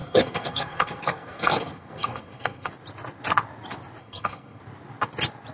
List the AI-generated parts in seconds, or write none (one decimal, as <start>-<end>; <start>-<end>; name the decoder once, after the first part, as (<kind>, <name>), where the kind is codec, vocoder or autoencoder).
0.0-2.7 (codec, SNAC); 4.0-4.6